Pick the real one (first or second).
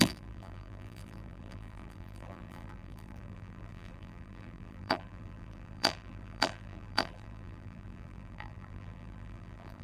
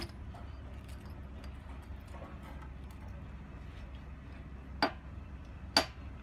second